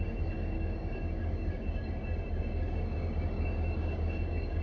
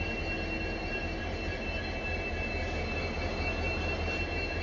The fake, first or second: first